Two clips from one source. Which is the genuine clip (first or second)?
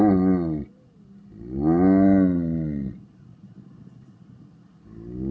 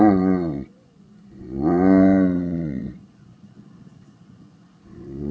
first